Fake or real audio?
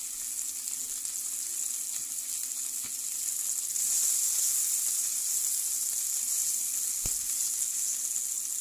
real